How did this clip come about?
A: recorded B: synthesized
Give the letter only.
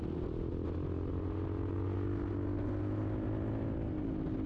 A